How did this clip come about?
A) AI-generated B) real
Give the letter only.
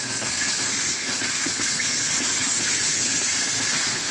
A